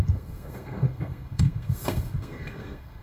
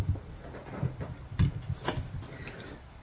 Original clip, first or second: second